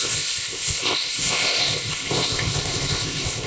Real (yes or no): no